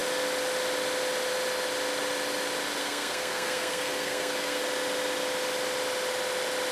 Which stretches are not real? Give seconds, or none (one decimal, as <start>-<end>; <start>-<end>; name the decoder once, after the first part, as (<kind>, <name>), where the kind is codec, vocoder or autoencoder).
2.8-4.6 (codec, SNAC)

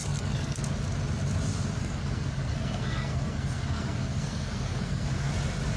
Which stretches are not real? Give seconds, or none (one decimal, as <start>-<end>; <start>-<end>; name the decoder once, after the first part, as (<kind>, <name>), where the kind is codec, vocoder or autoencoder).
0.0-0.6 (codec, SNAC); 1.8-5.3

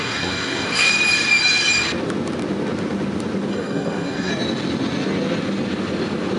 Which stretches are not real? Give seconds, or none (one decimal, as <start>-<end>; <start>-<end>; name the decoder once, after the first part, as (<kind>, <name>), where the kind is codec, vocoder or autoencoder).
0.0-0.9 (codec, SNAC); 3.5-4.3

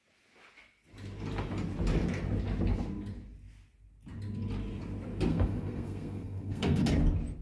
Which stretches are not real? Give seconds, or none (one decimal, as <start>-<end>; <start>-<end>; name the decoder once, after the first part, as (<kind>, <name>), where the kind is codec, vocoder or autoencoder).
5.3-6.8 (codec, SNAC)

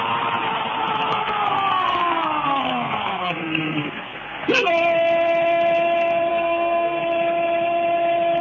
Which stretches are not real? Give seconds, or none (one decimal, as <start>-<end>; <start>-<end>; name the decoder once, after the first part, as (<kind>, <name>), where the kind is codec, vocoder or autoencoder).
1.1-4.7 (codec, SNAC); 6.3-7.0

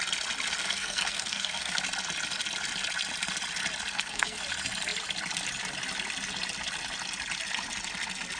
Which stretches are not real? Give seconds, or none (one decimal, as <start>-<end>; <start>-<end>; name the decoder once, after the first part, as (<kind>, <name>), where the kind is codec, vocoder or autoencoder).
0.6-1.8 (codec, SNAC); 3.9-4.4